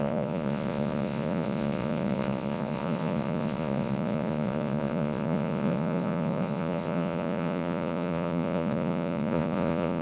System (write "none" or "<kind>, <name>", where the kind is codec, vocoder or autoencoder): vocoder, Vocos